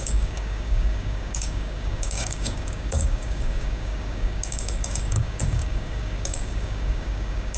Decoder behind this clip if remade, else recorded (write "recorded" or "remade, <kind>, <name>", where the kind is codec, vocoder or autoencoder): remade, codec, DAC